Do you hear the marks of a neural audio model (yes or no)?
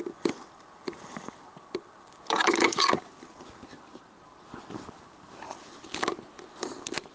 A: no